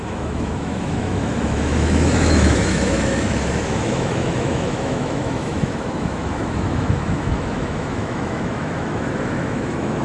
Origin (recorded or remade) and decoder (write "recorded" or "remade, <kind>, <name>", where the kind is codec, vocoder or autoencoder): remade, autoencoder, DAC-VAE